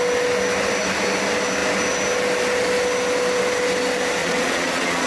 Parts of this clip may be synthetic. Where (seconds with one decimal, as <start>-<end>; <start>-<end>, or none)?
4.2-5.1